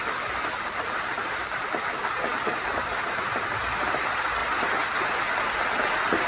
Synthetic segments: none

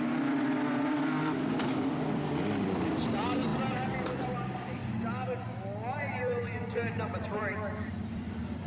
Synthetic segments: 0.0-3.5 (vocoder, BigVGAN v2); 4.2-4.8; 6.0-8.7

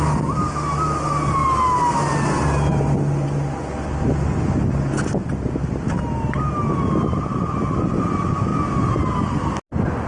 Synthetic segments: none